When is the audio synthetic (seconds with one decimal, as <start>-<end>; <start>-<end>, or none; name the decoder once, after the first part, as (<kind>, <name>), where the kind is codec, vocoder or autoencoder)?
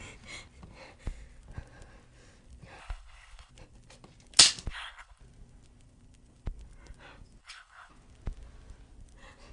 2.8-3.5 (codec, HILCodec); 4.7-5.2; 7.4-7.9